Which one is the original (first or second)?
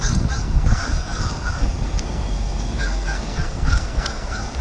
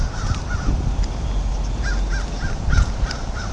second